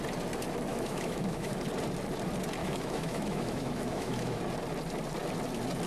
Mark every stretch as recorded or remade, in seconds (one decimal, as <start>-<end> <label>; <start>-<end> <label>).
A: 0.0-0.7 recorded; 0.7-1.6 remade; 1.6-2.6 recorded; 2.6-4.4 remade; 4.4-5.9 recorded